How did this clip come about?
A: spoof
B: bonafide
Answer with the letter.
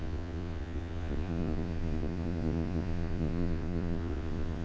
A